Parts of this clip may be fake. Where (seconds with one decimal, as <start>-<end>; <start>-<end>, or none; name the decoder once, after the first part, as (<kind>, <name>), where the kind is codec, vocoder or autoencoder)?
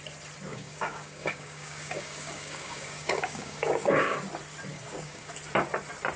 0.5-4.2 (codec, DAC); 4.7-5.3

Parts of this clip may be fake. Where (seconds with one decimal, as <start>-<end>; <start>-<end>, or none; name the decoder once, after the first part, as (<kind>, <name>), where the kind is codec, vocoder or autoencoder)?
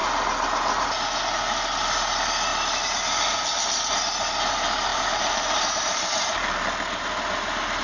4.9-6.6 (vocoder, BigVGAN v2)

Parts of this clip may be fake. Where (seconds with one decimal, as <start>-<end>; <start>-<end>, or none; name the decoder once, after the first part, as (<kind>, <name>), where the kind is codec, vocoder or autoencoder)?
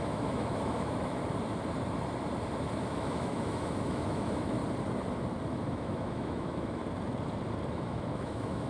0.0-1.2 (autoencoder, DAC-VAE); 2.8-4.6; 5.5-6.8; 7.7-8.7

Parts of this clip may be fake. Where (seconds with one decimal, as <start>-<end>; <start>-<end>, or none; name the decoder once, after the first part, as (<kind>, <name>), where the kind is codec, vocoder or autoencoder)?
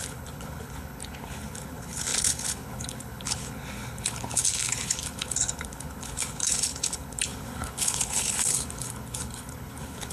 0.0-10.1 (codec, HILCodec)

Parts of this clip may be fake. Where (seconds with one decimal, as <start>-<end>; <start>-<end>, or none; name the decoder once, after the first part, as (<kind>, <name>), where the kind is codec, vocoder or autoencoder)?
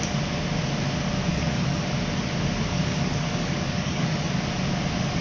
1.3-1.8 (codec, DAC); 2.7-4.3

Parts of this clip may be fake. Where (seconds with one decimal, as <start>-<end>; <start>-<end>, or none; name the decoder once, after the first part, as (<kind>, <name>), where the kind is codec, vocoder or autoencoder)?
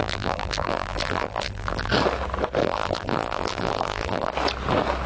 0.0-1.9 (vocoder, BigVGAN v2); 2.6-4.3